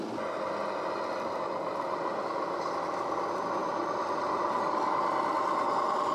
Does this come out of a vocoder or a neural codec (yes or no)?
no